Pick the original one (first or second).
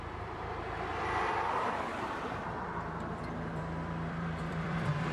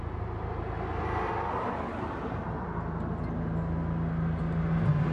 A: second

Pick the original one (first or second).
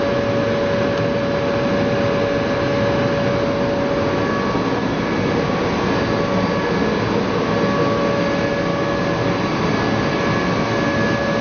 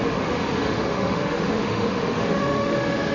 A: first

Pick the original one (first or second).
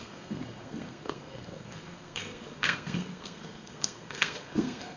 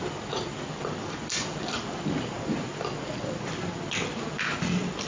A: second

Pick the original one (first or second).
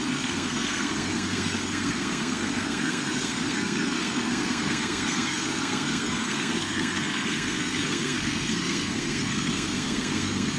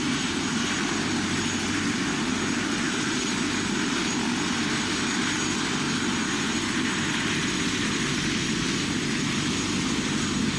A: second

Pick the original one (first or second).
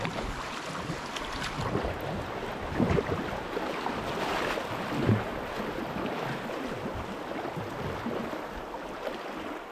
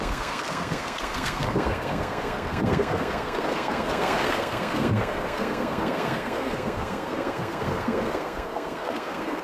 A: first